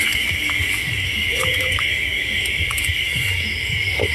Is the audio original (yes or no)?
no